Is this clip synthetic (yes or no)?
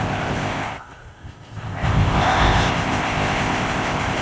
yes